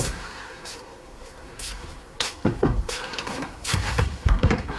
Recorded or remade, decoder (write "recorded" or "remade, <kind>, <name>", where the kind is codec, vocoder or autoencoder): remade, codec, SNAC